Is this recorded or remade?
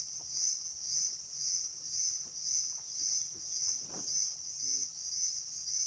recorded